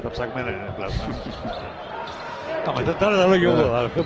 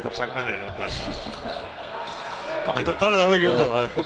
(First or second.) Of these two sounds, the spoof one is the second